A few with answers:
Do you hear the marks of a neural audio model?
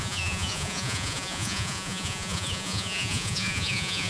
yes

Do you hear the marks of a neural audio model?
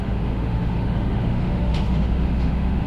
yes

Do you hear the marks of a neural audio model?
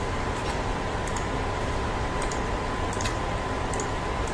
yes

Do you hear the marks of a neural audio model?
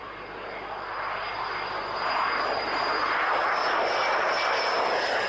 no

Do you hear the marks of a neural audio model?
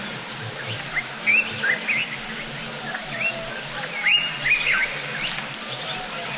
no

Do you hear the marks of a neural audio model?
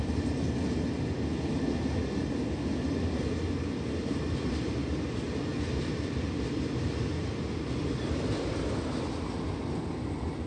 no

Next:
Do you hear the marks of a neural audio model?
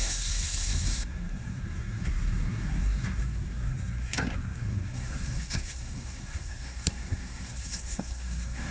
yes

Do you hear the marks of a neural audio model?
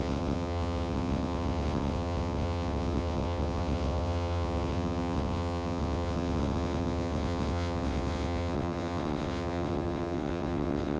yes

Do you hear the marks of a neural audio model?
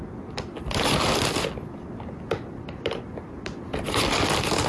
no